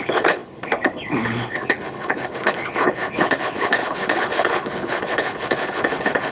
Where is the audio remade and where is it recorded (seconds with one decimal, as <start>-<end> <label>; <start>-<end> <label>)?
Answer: 0.0-6.3 remade